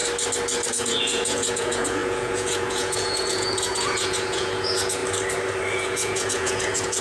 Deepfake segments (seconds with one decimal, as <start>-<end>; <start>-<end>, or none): 0.7-5.0; 5.7-7.0